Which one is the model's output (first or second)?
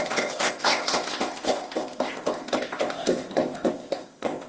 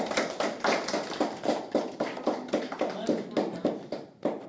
first